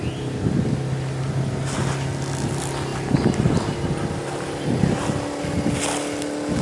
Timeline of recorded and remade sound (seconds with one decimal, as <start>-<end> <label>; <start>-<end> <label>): 0.0-6.6 recorded